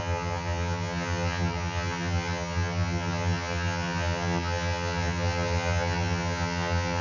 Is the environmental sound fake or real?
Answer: fake